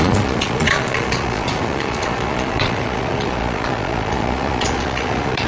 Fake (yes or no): yes